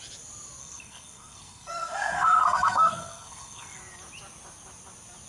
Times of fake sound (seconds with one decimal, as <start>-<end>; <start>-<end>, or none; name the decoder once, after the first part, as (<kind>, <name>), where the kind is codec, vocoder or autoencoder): 0.6-3.8 (codec, SNAC)